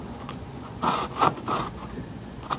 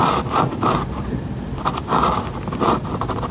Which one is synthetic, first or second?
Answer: first